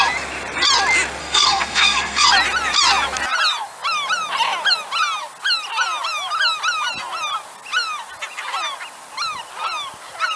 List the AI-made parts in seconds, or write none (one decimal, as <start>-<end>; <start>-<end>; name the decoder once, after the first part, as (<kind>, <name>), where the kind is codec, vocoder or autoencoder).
1.2-2.3 (codec, SNAC)